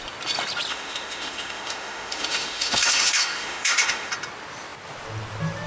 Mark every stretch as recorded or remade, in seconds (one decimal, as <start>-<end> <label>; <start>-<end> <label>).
0.0-0.7 recorded; 0.7-4.1 remade; 4.1-5.7 recorded